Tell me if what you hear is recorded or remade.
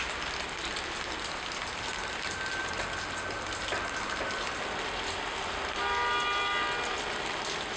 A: recorded